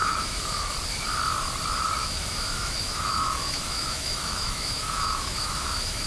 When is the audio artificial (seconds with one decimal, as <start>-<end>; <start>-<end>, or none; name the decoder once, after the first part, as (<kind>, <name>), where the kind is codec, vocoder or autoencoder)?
0.0-0.7 (autoencoder, DAC-VAE); 2.0-6.1